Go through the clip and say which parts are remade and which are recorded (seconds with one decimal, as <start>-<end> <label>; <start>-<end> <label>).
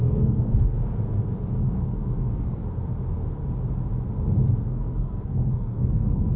0.0-2.6 remade; 2.6-4.6 recorded; 4.6-6.4 remade